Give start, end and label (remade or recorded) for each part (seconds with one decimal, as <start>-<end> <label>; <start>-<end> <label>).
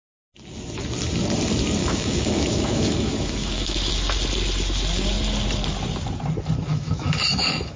0.0-1.8 recorded; 1.8-3.9 remade; 3.9-6.7 recorded; 6.7-7.8 remade